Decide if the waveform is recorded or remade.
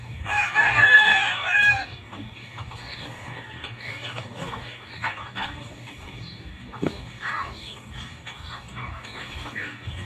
remade